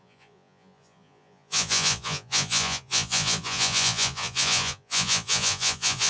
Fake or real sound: fake